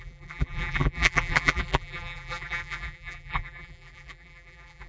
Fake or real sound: fake